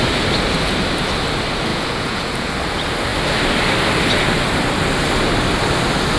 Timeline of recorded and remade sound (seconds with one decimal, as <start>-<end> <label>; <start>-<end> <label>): 0.0-1.7 recorded; 1.7-2.5 remade; 2.5-6.2 recorded